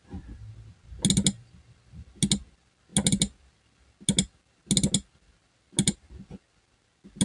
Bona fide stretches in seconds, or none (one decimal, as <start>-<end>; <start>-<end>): 0.0-7.2